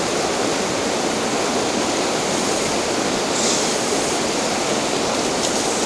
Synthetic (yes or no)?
no